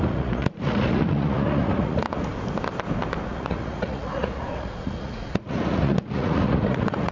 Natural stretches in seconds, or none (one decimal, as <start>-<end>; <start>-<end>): 2.3-3.3